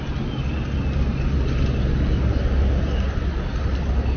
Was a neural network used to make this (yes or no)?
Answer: no